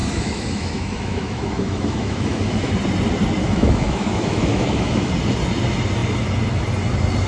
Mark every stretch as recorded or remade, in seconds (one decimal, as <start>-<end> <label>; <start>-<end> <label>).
0.0-2.7 remade; 2.7-3.4 recorded; 3.4-5.1 remade; 5.1-7.3 recorded